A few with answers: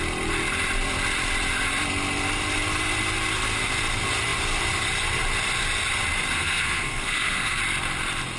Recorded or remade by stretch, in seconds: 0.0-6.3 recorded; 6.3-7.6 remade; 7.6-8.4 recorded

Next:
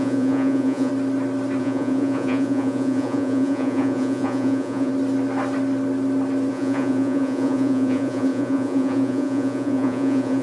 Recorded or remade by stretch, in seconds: 0.0-0.9 remade; 0.9-1.6 recorded; 1.6-4.9 remade; 4.9-6.5 recorded; 6.5-10.4 remade

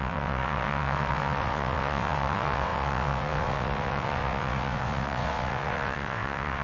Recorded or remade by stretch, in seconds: 0.0-6.6 remade